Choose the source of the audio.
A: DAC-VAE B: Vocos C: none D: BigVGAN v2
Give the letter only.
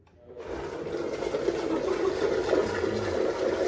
C